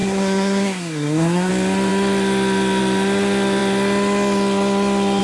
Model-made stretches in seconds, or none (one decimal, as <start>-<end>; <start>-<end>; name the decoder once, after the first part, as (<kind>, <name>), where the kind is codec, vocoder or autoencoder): 0.0-1.5 (codec, SNAC)